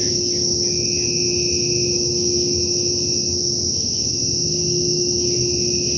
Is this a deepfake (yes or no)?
no